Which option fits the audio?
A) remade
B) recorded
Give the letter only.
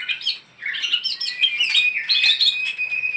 B